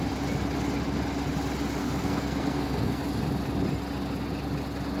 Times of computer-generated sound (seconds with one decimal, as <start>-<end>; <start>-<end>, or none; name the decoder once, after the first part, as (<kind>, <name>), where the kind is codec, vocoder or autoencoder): 1.8-3.0 (codec, SNAC)